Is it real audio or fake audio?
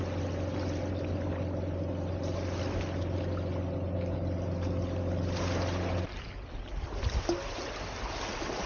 real